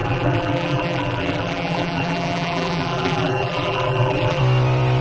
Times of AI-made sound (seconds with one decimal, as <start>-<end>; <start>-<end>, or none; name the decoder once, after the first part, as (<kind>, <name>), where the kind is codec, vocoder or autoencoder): 0.0-4.4 (vocoder, BigVGAN v2)